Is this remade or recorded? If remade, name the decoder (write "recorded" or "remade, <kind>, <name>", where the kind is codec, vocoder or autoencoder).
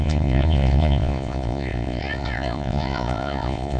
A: remade, vocoder, Vocos